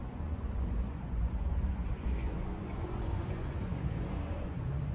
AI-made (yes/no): yes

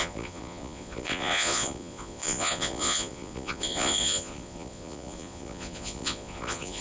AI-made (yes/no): yes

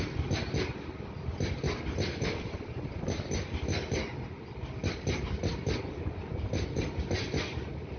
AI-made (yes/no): no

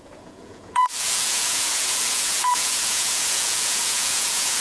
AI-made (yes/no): yes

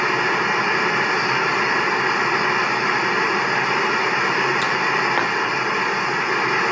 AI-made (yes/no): no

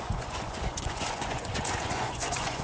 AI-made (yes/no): yes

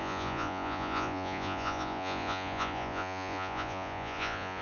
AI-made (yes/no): yes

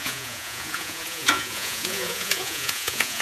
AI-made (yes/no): yes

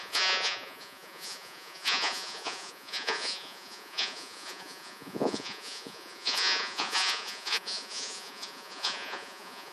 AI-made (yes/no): yes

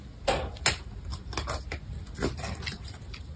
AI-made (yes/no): no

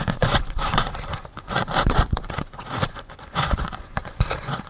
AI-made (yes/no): yes